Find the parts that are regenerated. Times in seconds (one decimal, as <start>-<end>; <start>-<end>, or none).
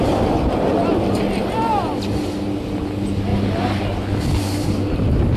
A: none